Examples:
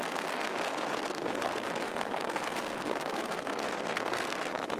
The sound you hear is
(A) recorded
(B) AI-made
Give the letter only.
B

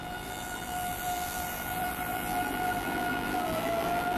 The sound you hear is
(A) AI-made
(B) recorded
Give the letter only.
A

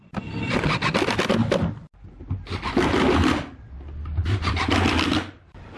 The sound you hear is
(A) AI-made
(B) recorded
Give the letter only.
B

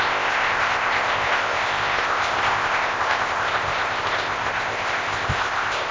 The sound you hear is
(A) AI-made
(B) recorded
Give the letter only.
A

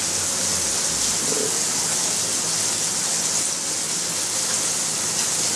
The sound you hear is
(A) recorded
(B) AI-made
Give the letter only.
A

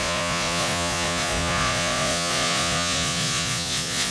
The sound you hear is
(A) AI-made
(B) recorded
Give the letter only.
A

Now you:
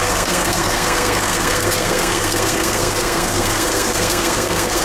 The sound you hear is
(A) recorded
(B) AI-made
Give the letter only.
B